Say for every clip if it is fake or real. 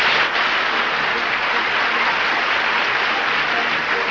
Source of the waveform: real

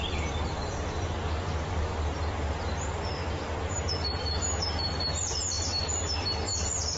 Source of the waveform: fake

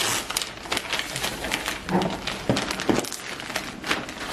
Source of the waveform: real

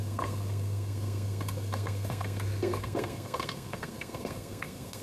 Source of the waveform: fake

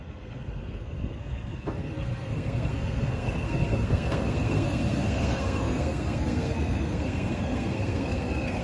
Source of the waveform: fake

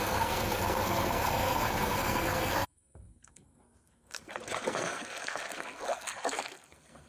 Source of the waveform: fake